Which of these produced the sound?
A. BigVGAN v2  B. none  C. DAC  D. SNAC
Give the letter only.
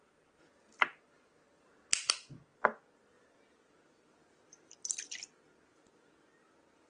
B